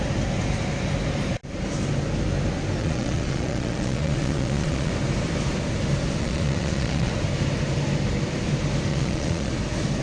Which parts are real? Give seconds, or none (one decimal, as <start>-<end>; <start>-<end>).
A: 0.0-2.8; 4.9-6.2; 7.1-8.9; 9.5-10.0